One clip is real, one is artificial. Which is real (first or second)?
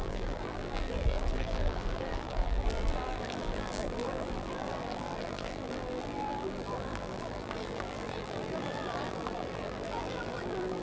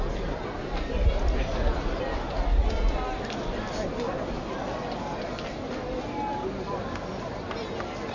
second